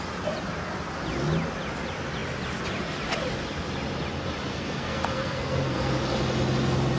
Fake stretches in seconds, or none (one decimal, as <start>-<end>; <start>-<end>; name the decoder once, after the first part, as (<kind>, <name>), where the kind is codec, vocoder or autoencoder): 4.5-5.9 (codec, SNAC)